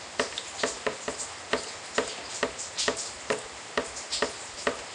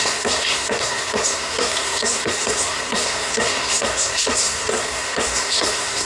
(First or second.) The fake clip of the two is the second